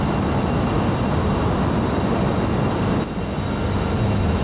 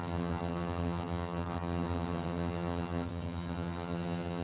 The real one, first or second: first